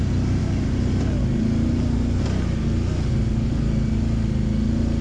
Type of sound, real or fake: real